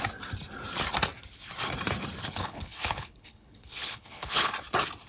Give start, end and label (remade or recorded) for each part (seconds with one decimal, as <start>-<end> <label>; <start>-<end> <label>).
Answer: 0.0-2.2 recorded; 2.2-4.5 remade; 4.5-5.1 recorded